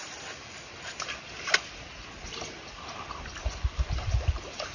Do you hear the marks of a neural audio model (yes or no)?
yes